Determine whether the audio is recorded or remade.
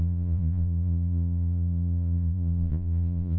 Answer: remade